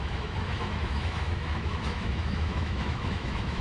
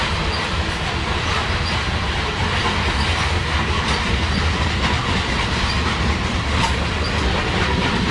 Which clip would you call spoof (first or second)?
first